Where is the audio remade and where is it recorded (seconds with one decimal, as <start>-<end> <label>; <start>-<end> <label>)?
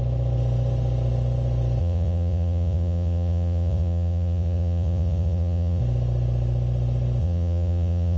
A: 0.0-1.8 recorded; 1.8-5.8 remade; 5.8-7.2 recorded; 7.2-8.2 remade